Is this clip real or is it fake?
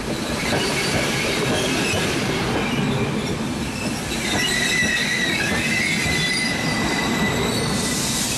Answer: fake